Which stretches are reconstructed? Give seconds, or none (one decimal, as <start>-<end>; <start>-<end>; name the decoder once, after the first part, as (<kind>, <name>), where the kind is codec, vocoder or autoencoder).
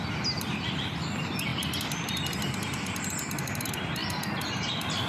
4.0-5.1 (vocoder, BigVGAN v2)